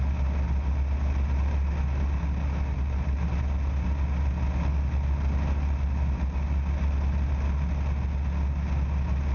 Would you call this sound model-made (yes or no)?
no